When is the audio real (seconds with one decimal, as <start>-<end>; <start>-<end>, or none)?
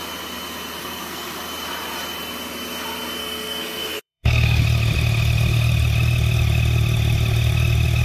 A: 0.0-0.8; 1.4-3.2; 4.6-8.0